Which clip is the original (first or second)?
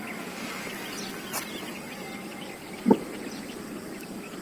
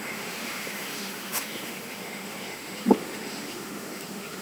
first